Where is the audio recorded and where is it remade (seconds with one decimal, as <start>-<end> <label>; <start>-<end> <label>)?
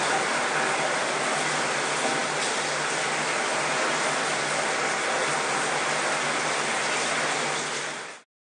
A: 0.0-8.5 recorded